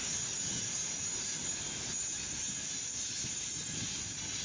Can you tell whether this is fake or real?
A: real